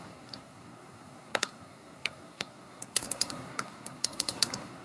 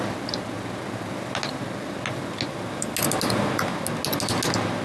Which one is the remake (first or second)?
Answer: first